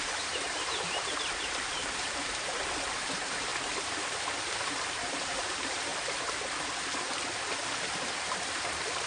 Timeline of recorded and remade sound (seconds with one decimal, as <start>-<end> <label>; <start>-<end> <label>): 0.0-3.5 remade; 3.5-5.1 recorded; 5.1-5.9 remade; 5.9-7.8 recorded; 7.8-9.1 remade